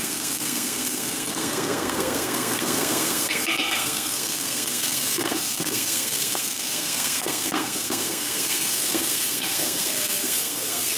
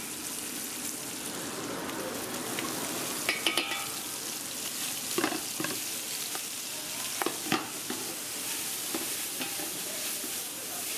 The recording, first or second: second